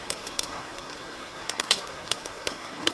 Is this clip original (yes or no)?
no